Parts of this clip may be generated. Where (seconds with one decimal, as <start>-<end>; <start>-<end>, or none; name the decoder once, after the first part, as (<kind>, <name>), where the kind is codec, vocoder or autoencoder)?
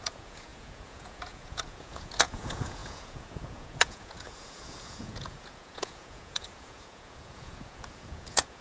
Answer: 0.0-8.6 (vocoder, Vocos)